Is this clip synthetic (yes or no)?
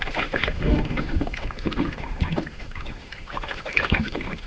yes